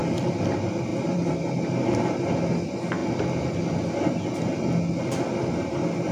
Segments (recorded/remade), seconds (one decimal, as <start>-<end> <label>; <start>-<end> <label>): 0.0-0.5 remade; 0.5-0.9 recorded; 0.9-2.2 remade; 2.2-6.1 recorded